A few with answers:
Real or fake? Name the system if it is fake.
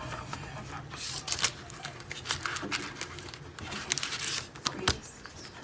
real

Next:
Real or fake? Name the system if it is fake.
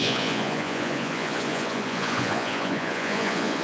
fake, vocoder, Vocos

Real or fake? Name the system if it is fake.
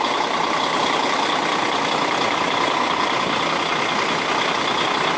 real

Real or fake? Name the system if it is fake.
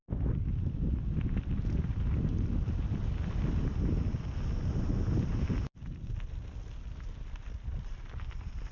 real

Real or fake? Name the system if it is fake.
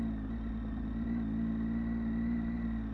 real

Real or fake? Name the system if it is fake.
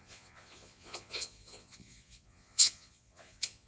fake, vocoder, Vocos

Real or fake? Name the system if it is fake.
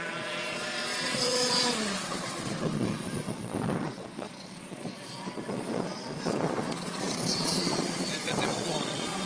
fake, vocoder, Vocos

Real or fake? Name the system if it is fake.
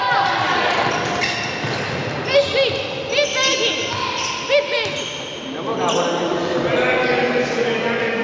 real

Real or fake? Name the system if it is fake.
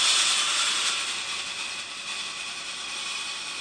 real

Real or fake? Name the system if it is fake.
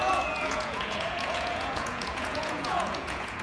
fake, vocoder, Vocos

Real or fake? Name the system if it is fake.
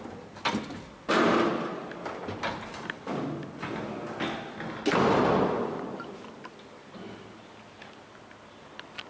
real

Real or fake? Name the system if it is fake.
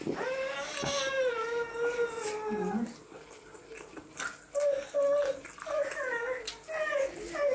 real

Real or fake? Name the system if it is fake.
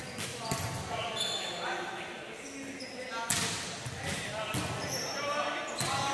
real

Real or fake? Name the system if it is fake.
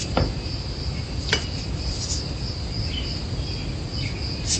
real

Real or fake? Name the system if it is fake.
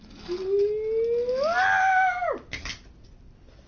real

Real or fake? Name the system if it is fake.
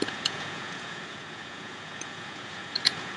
fake, vocoder, Vocos